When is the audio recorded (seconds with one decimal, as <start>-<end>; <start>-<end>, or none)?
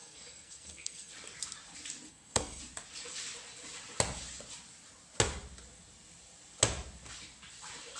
1.1-2.1; 2.6-8.0